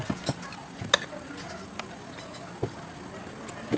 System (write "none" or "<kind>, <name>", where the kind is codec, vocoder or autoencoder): none